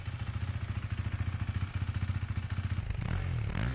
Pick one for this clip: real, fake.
real